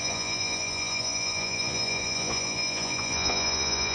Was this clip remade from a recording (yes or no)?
yes